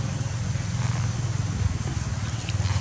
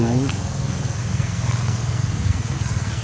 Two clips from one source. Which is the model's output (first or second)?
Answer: second